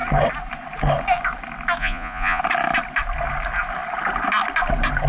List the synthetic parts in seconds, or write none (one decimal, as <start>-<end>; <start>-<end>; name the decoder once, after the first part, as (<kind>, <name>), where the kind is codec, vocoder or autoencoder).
1.8-2.4 (vocoder, Vocos)